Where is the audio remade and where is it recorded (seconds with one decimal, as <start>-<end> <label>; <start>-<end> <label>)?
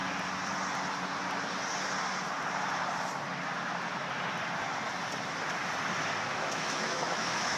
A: 0.0-6.3 recorded; 6.3-7.6 remade